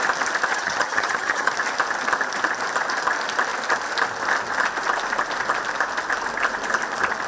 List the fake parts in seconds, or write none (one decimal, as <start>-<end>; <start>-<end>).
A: 0.5-1.5